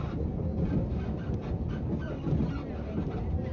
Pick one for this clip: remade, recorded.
recorded